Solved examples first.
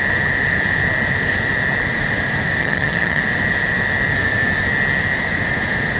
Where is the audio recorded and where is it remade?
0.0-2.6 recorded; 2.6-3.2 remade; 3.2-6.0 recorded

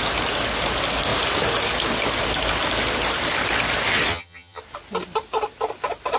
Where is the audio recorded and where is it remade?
0.0-4.1 recorded; 4.1-4.6 remade; 4.6-6.2 recorded

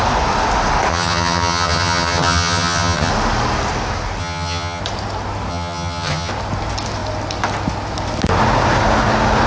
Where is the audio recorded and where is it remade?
0.0-0.9 recorded; 0.9-3.1 remade; 3.1-4.2 recorded; 4.2-4.8 remade; 4.8-5.5 recorded; 5.5-6.3 remade; 6.3-9.5 recorded

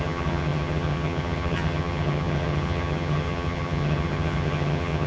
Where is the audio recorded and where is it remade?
0.0-5.1 remade

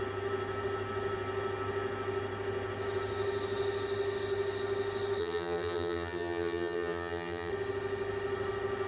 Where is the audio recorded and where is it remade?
0.0-5.2 recorded; 5.2-7.5 remade; 7.5-8.9 recorded

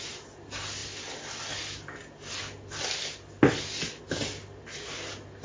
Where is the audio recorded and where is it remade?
0.0-5.4 recorded

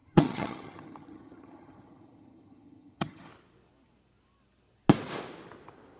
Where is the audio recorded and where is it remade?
0.0-3.3 remade; 3.3-6.0 recorded

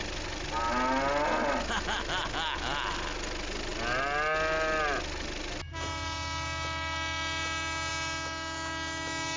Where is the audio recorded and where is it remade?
0.0-9.4 recorded